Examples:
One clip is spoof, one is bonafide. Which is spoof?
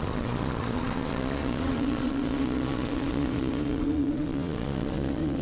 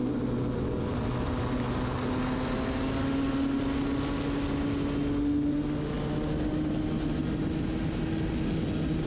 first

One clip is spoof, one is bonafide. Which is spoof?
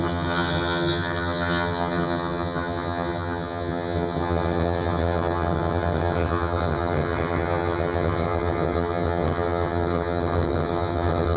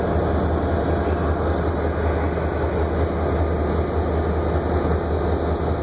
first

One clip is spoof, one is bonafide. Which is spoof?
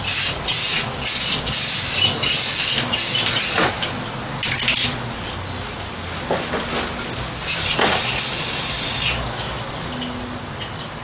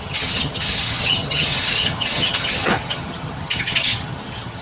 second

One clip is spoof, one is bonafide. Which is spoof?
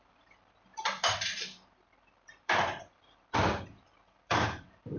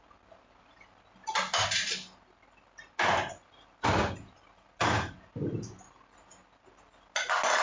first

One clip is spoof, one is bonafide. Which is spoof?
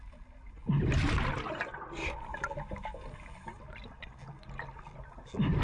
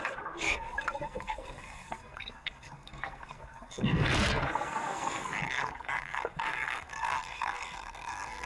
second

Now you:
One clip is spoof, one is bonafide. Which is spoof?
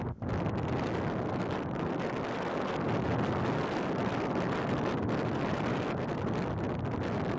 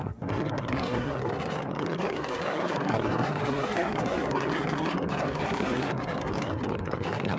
second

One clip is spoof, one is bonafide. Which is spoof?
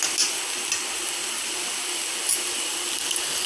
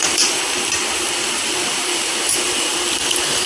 second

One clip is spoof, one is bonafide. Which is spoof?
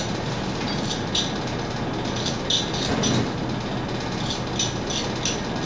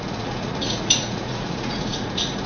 second